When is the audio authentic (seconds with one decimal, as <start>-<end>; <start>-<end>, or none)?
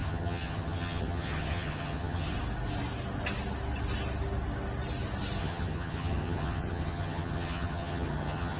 2.3-5.4